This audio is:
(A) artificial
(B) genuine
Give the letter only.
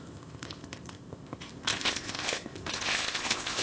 A